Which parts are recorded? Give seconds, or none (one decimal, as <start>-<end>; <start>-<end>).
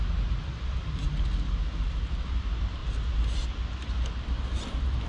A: 0.0-5.1